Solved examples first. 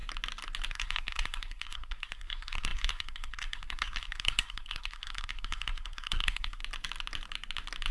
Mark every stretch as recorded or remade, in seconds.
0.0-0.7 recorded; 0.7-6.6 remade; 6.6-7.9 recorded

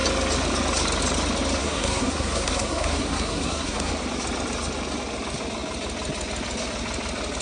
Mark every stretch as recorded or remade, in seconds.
0.0-1.6 recorded; 1.6-3.9 remade; 3.9-7.4 recorded

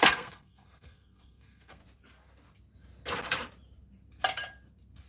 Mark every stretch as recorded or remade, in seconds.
0.0-1.8 remade; 1.8-5.1 recorded

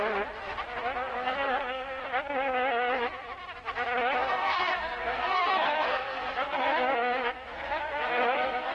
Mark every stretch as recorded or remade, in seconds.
0.0-1.1 recorded; 1.1-2.0 remade; 2.0-4.2 recorded; 4.2-8.7 remade